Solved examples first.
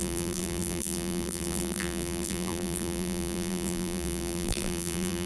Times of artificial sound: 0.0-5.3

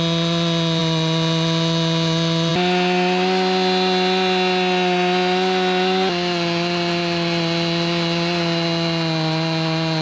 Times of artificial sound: none

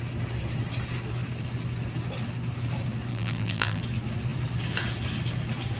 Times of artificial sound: 3.1-3.8

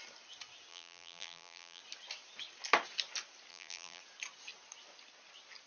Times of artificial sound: 0.7-1.8; 3.5-4.0